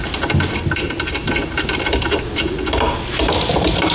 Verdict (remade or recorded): recorded